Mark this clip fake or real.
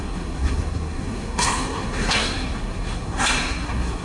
fake